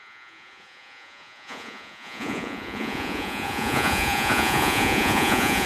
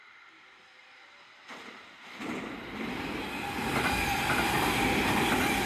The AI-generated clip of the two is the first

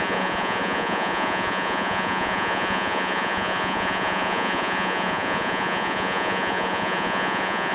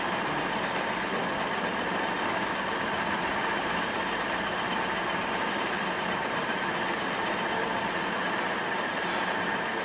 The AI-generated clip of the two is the first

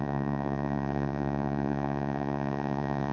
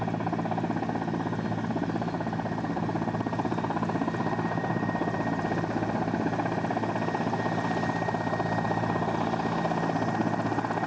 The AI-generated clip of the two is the first